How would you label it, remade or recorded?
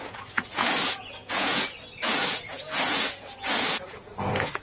remade